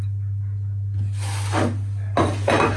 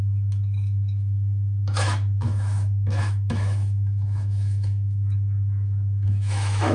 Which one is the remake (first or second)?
second